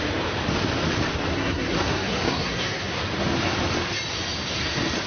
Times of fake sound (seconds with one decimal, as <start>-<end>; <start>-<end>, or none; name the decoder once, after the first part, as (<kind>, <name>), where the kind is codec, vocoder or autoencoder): 1.3-3.0 (codec, SNAC)